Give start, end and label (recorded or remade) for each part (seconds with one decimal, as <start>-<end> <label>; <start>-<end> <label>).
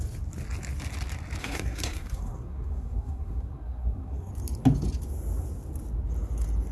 0.0-1.4 recorded; 1.4-4.3 remade; 4.3-6.7 recorded